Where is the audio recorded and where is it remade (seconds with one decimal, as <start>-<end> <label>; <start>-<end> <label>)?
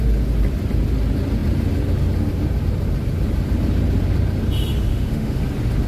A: 0.0-4.9 recorded; 4.9-5.4 remade; 5.4-5.9 recorded